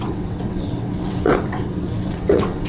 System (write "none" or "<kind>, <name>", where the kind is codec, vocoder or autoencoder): vocoder, WaveNeXt